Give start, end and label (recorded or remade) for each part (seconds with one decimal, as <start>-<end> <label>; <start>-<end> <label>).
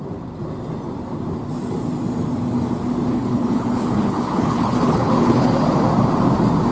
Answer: 0.0-3.1 recorded; 3.1-5.5 remade; 5.5-6.7 recorded